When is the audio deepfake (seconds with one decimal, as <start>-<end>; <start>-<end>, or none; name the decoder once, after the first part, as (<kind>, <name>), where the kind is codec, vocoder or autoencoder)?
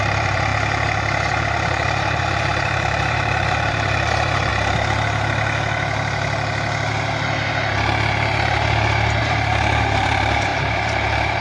0.0-0.5 (vocoder, BigVGAN v2); 1.4-4.5; 9.2-11.4